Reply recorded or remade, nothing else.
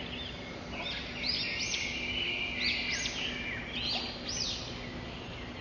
recorded